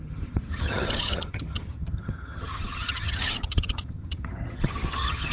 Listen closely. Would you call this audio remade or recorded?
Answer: remade